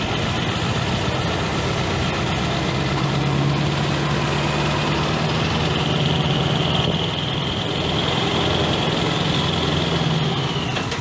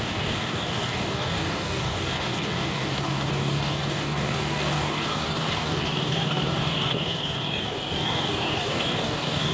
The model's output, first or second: second